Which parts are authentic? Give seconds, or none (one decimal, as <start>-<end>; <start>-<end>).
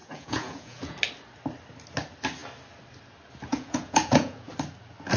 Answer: 0.9-3.5; 4.5-5.2